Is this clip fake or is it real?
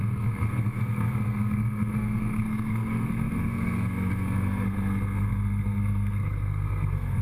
fake